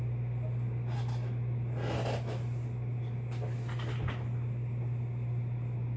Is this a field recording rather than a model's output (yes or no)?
yes